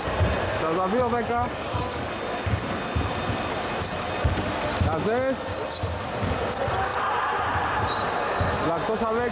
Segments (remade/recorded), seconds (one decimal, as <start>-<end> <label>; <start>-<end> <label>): 0.0-1.0 recorded; 1.0-2.1 remade; 2.1-9.3 recorded